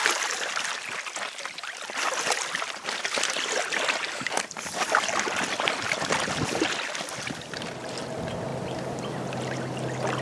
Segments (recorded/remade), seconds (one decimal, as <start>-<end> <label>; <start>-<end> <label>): 0.0-10.2 recorded